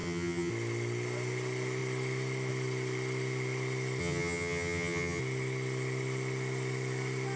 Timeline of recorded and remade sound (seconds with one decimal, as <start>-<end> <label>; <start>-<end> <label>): 0.0-0.5 remade; 0.5-4.0 recorded; 4.0-5.2 remade; 5.2-7.4 recorded

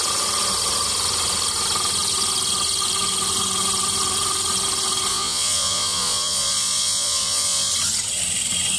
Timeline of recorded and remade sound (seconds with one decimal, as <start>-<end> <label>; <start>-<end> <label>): 0.0-5.1 recorded; 5.1-7.7 remade; 7.7-8.8 recorded

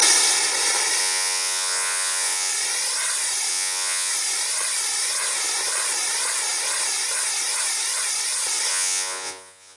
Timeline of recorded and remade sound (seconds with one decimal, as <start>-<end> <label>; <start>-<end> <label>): 0.0-1.0 recorded; 1.0-2.5 remade; 2.5-3.5 recorded; 3.5-4.1 remade; 4.1-8.7 recorded; 8.7-9.8 remade

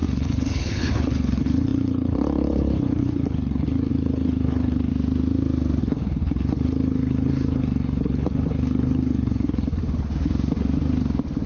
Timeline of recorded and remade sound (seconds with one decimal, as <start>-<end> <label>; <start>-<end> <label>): 0.0-4.9 remade; 4.9-5.8 recorded; 5.8-9.8 remade; 9.8-11.5 recorded

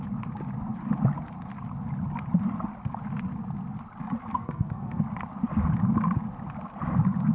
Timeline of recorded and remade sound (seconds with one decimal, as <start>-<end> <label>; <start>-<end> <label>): 0.0-4.3 recorded; 4.3-5.0 remade; 5.0-7.3 recorded